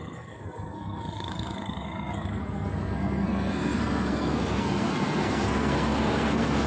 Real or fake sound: fake